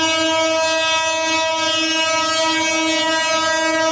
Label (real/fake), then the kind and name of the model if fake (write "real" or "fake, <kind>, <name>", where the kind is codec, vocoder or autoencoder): real